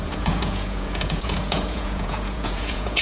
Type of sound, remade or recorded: remade